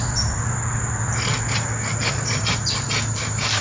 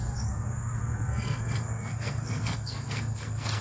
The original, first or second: first